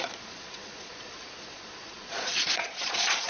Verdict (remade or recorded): remade